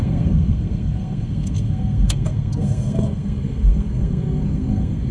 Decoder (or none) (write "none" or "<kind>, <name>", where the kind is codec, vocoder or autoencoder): codec, SNAC